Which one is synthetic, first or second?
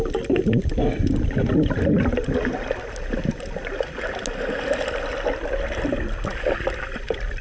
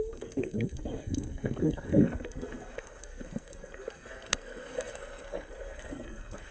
second